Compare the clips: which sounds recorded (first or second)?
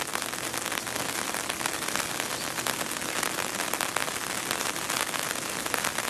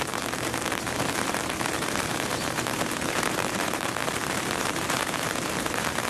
first